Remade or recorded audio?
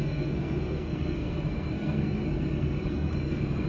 remade